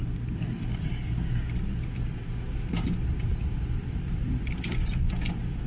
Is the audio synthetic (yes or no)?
yes